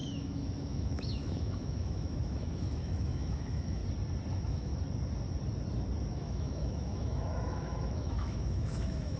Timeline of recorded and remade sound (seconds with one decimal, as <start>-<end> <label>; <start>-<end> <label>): 0.0-3.8 remade; 3.8-4.3 recorded; 4.3-4.7 remade; 4.7-6.1 recorded; 6.1-9.2 remade

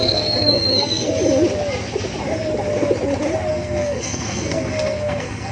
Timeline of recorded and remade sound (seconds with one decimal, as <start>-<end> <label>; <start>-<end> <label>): 0.0-1.1 remade; 1.1-3.5 recorded; 3.5-5.5 remade

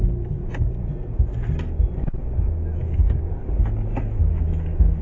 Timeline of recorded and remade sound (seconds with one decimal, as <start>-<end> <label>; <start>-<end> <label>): 0.0-0.8 remade; 0.8-2.8 recorded; 2.8-3.3 remade; 3.3-4.2 recorded; 4.2-5.0 remade